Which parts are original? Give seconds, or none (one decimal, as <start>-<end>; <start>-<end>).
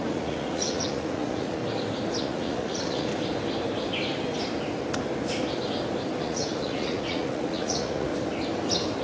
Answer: 1.6-2.2; 3.1-6.2; 8.1-9.0